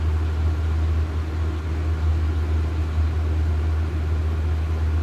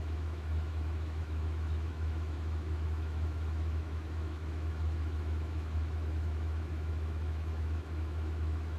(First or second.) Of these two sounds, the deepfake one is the second